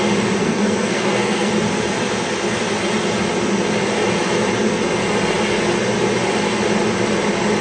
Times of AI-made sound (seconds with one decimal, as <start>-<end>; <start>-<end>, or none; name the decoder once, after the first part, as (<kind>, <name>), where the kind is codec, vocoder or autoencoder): 0.4-1.5 (codec, SNAC)